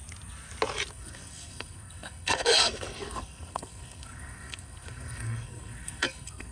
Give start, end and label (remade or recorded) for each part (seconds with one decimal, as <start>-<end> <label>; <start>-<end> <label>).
0.0-0.9 recorded; 0.9-6.5 remade